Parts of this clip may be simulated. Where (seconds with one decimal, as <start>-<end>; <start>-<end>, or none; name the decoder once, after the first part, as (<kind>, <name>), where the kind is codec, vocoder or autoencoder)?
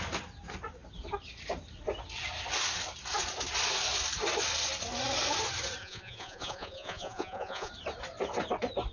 5.8-7.7 (vocoder, Vocos)